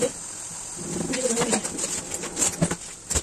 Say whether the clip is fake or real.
real